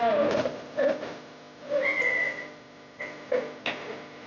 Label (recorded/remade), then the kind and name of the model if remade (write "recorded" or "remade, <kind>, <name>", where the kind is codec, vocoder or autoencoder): recorded